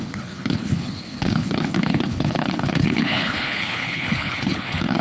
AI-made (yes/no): yes